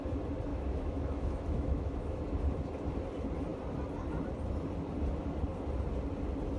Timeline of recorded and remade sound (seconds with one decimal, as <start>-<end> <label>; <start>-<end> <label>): 0.0-0.5 recorded; 0.5-2.2 remade; 2.2-6.6 recorded